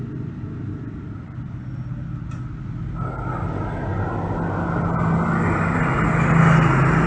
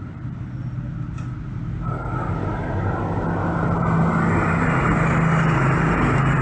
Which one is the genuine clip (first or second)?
first